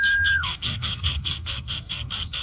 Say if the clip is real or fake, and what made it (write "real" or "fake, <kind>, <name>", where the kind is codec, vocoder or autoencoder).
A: fake, codec, SNAC